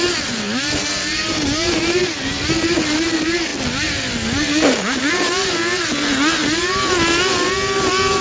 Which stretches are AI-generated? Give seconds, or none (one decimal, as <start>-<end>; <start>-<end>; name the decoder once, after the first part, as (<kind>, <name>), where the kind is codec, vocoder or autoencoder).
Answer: none